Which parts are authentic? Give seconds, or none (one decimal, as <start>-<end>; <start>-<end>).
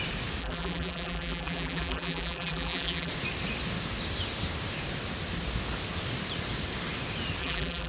0.0-0.4; 3.1-7.4